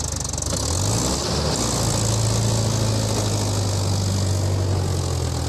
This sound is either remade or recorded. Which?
recorded